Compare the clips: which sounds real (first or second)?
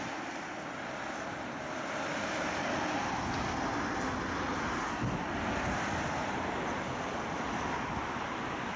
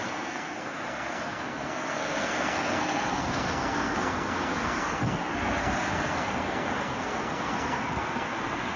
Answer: first